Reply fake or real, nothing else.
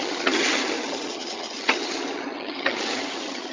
fake